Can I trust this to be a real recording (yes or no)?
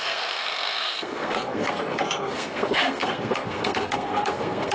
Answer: no